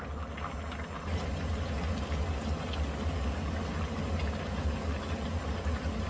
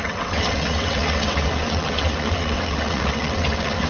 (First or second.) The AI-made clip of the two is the second